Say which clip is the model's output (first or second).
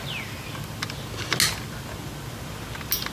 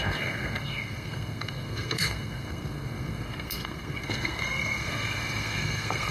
second